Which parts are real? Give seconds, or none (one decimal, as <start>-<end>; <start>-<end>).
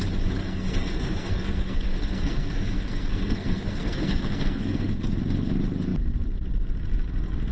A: 0.0-0.4; 4.9-7.5